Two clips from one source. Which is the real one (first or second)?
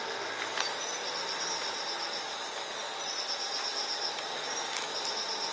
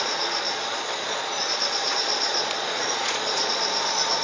first